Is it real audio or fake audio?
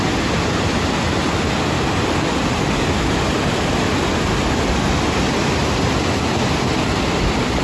real